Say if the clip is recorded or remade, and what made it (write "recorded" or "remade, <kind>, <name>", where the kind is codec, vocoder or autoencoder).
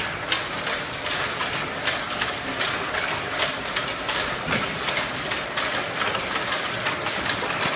recorded